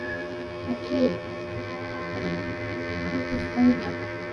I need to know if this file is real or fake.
fake